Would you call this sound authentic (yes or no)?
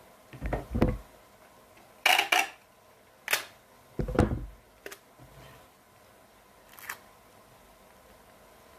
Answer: yes